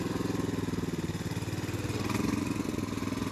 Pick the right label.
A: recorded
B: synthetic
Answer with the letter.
A